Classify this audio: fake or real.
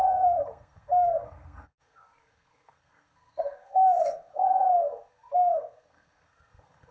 fake